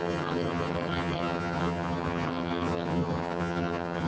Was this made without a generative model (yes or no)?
no